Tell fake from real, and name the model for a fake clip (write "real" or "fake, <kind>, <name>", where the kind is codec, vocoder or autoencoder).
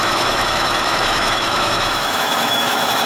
fake, autoencoder, DAC-VAE